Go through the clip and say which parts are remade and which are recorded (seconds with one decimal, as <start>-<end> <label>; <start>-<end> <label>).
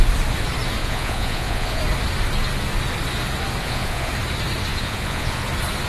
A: 0.0-0.8 recorded; 0.8-1.8 remade; 1.8-3.6 recorded; 3.6-4.1 remade; 4.1-4.7 recorded; 4.7-5.5 remade; 5.5-5.9 recorded